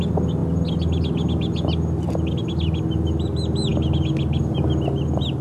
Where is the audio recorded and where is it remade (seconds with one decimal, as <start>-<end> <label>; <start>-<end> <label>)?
0.0-5.4 recorded